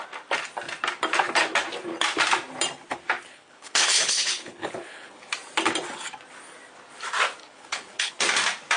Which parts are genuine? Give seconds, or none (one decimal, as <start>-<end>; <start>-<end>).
0.0-3.3; 5.3-7.4; 8.1-8.8